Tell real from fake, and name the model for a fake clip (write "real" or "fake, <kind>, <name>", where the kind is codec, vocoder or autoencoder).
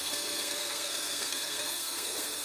fake, codec, SNAC